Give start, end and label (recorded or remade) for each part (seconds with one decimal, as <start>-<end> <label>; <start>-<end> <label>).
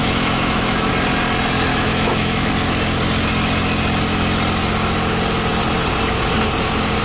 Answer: 0.0-0.9 remade; 0.9-1.7 recorded; 1.7-2.5 remade; 2.5-7.0 recorded